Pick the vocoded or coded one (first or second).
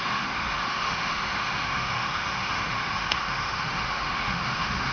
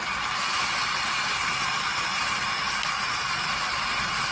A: first